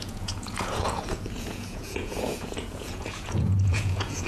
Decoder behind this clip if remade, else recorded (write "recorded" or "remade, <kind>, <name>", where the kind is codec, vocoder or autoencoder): remade, vocoder, Vocos